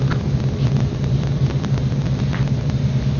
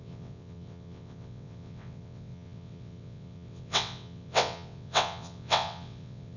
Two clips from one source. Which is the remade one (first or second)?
second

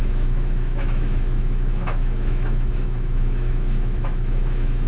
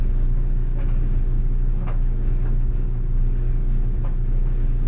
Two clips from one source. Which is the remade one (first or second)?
first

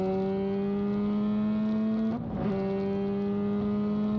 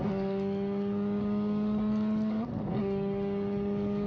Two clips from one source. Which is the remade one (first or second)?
second